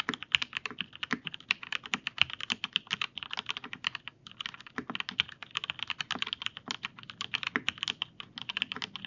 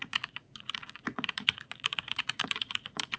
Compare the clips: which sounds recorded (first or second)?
first